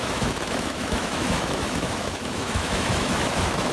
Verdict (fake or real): fake